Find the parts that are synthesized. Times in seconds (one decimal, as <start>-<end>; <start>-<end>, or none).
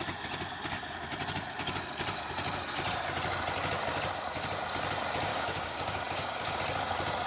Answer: 5.3-6.6